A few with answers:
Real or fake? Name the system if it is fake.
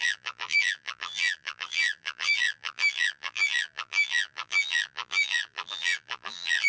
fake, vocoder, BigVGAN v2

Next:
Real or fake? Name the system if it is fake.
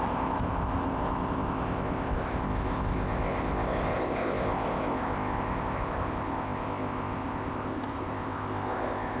fake, codec, ZipCodec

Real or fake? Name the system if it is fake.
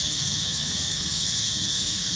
fake, codec, SNAC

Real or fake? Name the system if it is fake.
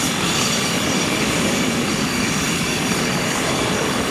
fake, codec, DAC